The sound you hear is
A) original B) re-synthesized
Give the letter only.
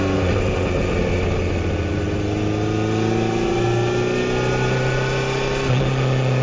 A